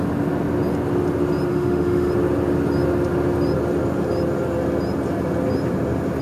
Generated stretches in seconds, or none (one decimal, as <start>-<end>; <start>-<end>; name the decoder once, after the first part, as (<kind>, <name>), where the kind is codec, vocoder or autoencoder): 1.5-2.1 (autoencoder, DAC-VAE)